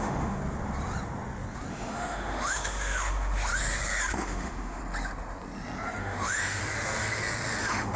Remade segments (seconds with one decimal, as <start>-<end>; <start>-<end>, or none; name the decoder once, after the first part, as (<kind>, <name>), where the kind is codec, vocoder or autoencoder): 0.0-0.4 (autoencoder, DAC-VAE); 1.7-3.5; 4.1-4.8; 6.0-6.6; 7.6-8.0